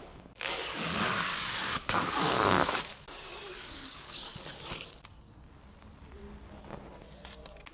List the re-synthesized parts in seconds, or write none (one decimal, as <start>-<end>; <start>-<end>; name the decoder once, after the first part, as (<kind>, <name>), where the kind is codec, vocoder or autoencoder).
0.0-2.9 (codec, DAC); 3.5-4.3